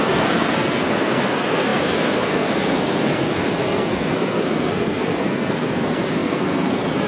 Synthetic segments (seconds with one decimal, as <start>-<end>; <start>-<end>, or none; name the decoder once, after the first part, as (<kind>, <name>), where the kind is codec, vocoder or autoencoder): 0.0-7.1 (codec, SNAC)